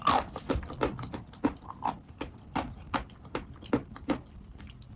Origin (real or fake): real